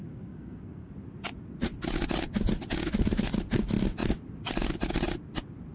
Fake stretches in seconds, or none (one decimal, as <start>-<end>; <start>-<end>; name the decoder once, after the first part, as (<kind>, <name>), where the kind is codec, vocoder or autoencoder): 0.0-0.9 (codec, SNAC)